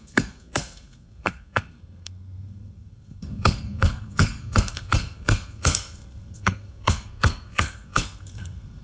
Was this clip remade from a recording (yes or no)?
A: yes